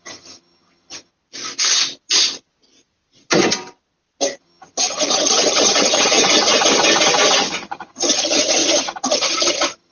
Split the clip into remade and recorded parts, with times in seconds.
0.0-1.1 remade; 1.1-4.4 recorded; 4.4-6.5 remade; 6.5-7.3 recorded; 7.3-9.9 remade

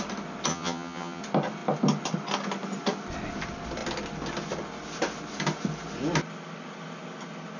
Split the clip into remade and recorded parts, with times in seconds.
0.0-0.5 recorded; 0.5-1.2 remade; 1.2-7.6 recorded

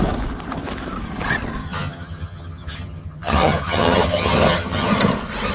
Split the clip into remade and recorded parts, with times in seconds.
0.0-1.6 recorded; 1.6-4.9 remade; 4.9-5.5 recorded

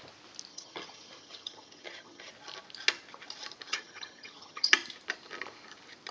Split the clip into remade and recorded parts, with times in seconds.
0.0-0.5 recorded; 0.5-2.3 remade; 2.3-3.7 recorded; 3.7-4.7 remade; 4.7-6.1 recorded

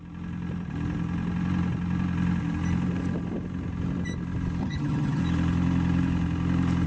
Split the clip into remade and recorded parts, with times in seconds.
0.0-4.6 recorded; 4.6-5.2 remade; 5.2-6.9 recorded

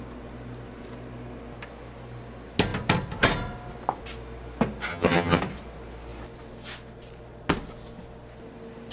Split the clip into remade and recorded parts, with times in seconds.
0.0-4.9 recorded; 4.9-5.4 remade; 5.4-8.9 recorded